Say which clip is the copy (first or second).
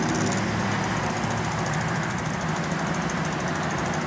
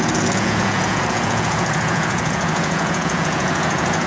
second